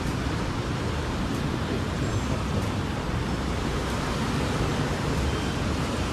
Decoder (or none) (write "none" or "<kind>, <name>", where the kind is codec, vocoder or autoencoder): vocoder, BigVGAN v2